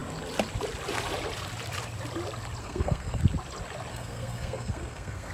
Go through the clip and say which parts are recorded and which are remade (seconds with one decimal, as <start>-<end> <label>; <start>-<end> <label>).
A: 0.0-2.6 recorded; 2.6-3.2 remade; 3.2-3.9 recorded; 3.9-5.3 remade